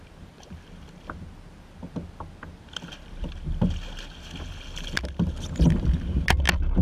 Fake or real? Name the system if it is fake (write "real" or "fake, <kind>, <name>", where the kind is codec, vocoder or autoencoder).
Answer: real